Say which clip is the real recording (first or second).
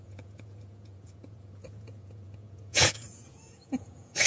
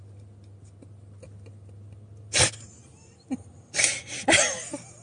second